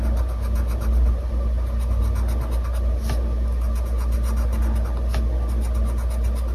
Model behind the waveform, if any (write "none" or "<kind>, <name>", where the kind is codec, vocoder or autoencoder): none